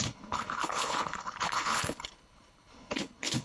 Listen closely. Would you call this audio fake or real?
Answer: fake